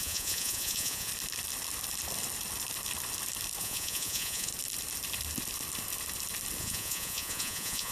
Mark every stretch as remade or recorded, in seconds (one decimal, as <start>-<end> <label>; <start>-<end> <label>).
0.0-1.1 remade; 1.1-3.6 recorded; 3.6-4.5 remade; 4.5-6.6 recorded; 6.6-7.9 remade